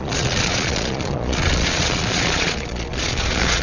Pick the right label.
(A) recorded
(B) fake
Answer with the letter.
B